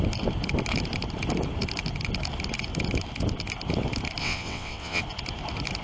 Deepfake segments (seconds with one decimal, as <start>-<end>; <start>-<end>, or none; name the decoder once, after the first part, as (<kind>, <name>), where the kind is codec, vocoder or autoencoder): 4.2-5.0 (vocoder, WaveNeXt)